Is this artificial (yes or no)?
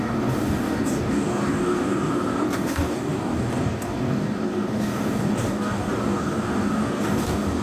yes